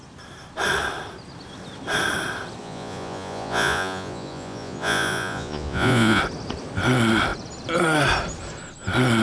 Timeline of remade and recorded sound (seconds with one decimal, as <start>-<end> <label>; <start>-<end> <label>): 0.0-2.6 recorded; 2.6-6.2 remade; 6.2-9.2 recorded